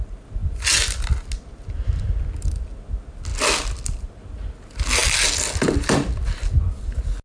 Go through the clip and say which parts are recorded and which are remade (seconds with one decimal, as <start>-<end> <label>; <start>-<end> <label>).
0.0-7.2 recorded